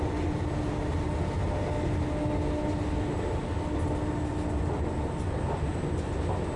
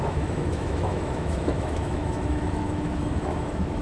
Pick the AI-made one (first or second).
second